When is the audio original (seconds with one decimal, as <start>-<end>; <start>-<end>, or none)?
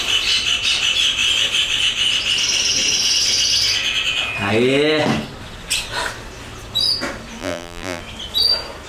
0.0-7.4; 8.0-8.9